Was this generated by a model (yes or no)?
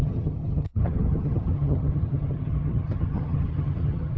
yes